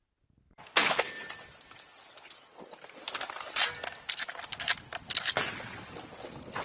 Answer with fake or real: real